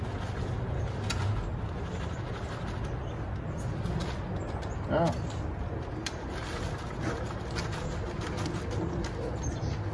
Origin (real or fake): real